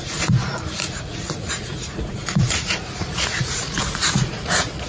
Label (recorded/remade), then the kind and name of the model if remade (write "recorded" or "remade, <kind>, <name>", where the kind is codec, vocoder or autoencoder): remade, vocoder, Vocos